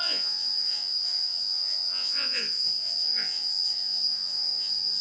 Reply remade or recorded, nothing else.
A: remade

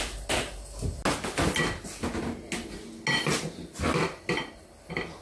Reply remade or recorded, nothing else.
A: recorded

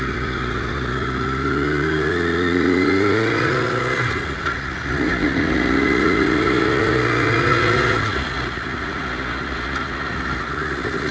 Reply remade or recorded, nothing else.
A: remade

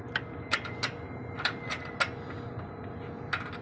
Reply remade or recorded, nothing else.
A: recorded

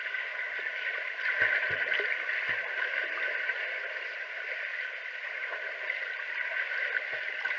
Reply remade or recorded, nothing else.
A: recorded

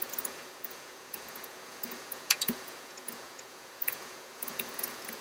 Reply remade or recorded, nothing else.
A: remade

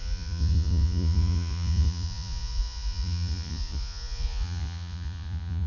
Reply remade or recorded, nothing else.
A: remade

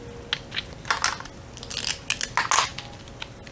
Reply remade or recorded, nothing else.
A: recorded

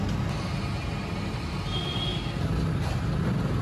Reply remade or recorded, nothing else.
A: recorded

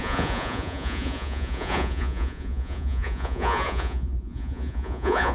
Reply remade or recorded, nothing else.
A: remade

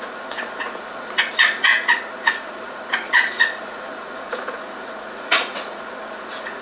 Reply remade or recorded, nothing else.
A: remade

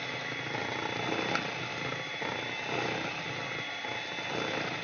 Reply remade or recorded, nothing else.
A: recorded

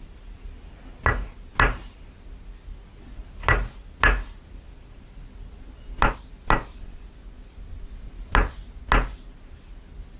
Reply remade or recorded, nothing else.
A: recorded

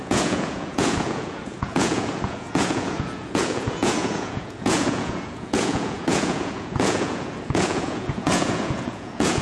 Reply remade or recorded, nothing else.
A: remade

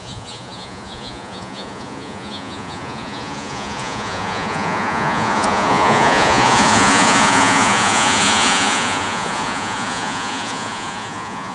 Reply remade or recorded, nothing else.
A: remade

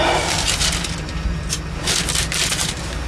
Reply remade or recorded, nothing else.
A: recorded